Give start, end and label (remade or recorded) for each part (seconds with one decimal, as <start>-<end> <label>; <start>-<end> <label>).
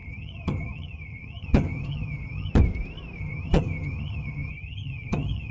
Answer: 0.0-2.5 remade; 2.5-3.2 recorded; 3.2-5.5 remade